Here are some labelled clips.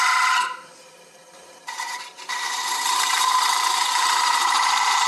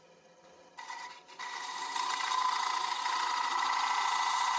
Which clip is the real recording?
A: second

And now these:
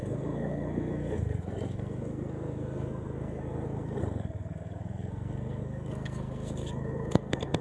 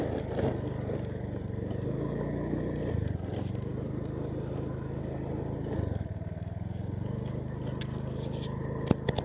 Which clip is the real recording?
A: second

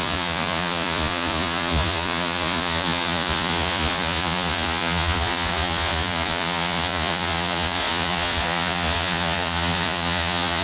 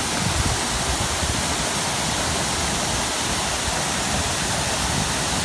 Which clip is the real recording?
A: second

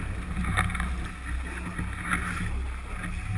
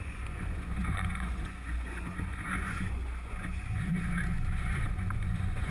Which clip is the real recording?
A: first